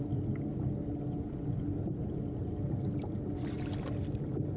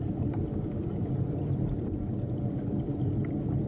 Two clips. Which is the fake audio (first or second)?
second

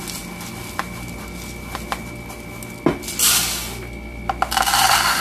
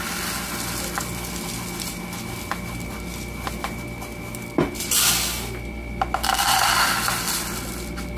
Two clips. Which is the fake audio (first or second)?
second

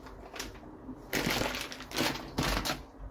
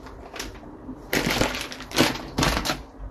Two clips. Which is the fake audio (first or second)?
second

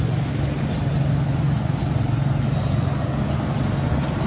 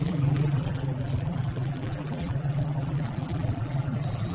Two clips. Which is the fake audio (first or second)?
second